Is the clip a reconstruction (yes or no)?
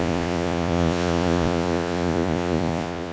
yes